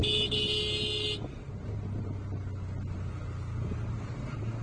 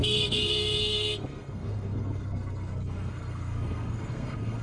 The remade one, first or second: second